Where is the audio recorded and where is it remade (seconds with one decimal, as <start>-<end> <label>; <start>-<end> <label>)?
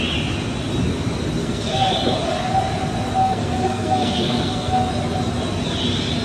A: 0.0-1.4 recorded; 1.4-1.9 remade; 1.9-3.2 recorded; 3.2-4.9 remade; 4.9-6.2 recorded